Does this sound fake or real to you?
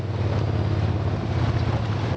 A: real